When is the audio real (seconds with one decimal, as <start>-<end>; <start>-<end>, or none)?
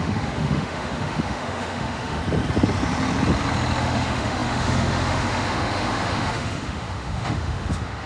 2.2-3.8